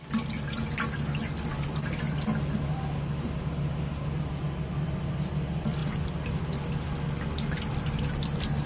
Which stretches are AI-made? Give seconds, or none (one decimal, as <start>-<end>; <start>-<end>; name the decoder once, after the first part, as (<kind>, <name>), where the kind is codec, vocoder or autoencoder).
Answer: none